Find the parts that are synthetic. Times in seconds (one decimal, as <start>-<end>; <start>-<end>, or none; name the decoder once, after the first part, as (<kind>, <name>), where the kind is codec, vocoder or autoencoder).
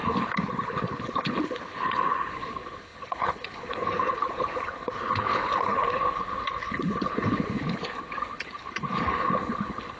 0.0-10.0 (codec, HILCodec)